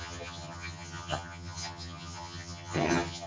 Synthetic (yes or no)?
yes